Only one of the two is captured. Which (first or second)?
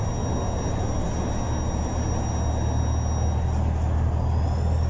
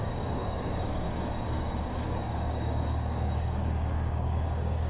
first